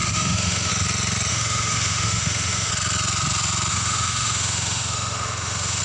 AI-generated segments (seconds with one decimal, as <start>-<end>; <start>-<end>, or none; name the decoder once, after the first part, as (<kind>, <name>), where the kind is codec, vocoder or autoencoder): 0.0-0.7 (autoencoder, DAC-VAE); 1.3-2.7; 3.7-5.8